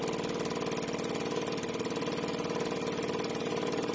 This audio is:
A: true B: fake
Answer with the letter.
A